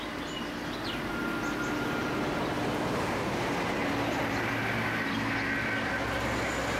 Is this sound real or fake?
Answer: real